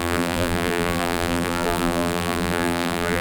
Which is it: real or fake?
fake